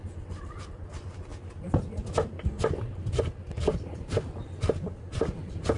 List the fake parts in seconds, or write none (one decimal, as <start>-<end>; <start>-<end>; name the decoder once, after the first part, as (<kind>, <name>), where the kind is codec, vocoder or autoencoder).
0.0-1.3 (vocoder, BigVGAN v2); 3.5-4.4; 5.0-5.8